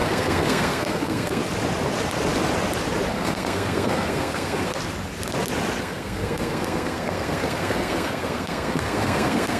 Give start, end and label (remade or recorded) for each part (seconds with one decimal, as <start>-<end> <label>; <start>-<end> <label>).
0.0-1.4 remade; 1.4-3.1 recorded; 3.1-4.8 remade; 4.8-5.8 recorded; 5.8-9.6 remade